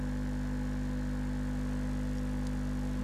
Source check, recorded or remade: recorded